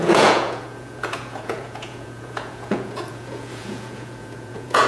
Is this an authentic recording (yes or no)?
no